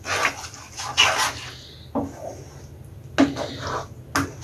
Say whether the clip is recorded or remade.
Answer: recorded